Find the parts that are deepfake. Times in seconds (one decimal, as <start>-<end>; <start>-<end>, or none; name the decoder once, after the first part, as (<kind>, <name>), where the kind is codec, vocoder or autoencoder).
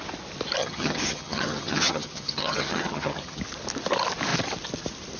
0.6-3.4 (vocoder, HiFi-GAN)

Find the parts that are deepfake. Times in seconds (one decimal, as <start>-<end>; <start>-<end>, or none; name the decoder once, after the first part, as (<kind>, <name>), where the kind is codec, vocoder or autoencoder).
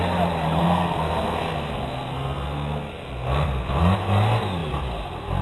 0.6-3.8 (codec, SNAC)